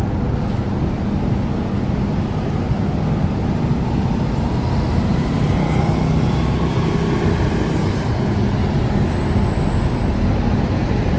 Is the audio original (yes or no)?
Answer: yes